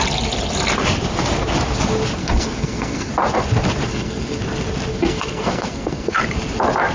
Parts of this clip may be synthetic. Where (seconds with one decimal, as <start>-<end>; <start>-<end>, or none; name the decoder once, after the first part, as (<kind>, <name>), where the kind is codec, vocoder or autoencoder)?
2.2-3.1 (codec, SNAC); 3.9-4.4; 4.9-6.2